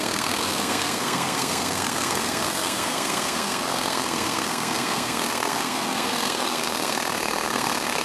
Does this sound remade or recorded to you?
remade